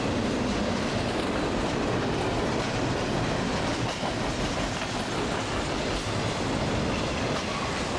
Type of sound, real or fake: real